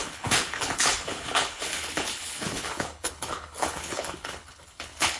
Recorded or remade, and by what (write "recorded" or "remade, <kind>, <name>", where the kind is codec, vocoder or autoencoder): remade, codec, HILCodec